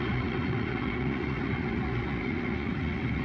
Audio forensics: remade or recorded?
remade